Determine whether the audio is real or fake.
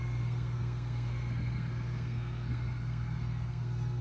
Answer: fake